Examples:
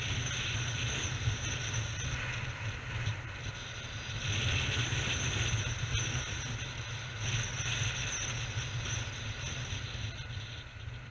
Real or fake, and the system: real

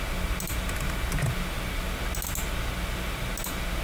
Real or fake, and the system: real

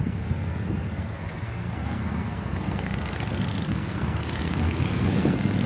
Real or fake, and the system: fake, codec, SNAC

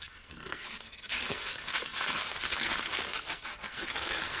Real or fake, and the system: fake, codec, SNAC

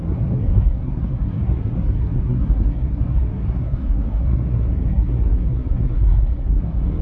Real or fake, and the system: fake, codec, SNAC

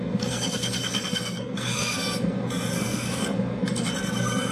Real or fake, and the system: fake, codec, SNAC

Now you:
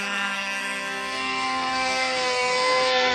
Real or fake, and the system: fake, codec, SNAC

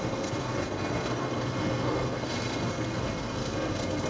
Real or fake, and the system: fake, codec, SNAC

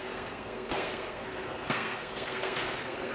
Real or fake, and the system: fake, codec, SNAC